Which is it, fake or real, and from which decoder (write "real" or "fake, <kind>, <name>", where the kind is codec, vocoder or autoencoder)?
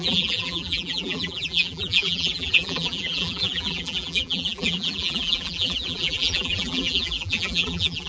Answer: fake, vocoder, BigVGAN v2